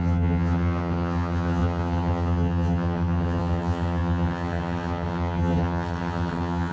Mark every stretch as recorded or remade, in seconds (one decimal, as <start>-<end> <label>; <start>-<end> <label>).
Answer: 0.0-6.7 remade